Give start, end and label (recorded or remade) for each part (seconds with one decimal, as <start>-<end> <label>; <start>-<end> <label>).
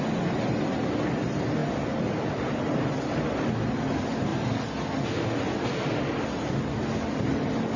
0.0-7.8 recorded